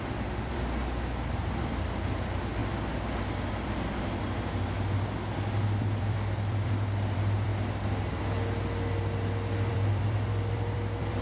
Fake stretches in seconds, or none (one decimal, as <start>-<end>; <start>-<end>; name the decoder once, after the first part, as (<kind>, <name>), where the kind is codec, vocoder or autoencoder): 0.0-0.8 (vocoder, BigVGAN v2); 1.6-2.6; 5.8-7.5; 9.7-11.2